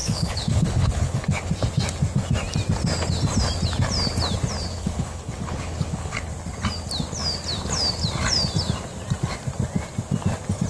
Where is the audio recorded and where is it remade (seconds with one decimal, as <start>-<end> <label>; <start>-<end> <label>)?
0.0-1.5 remade; 1.5-4.7 recorded; 4.7-6.3 remade; 6.3-10.7 recorded

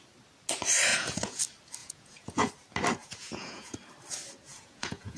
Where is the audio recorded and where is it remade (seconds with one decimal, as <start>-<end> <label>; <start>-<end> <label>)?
0.0-0.9 recorded; 0.9-1.4 remade; 1.4-1.8 recorded; 1.8-2.5 remade; 2.5-3.0 recorded; 3.0-3.8 remade; 3.8-4.5 recorded; 4.5-5.2 remade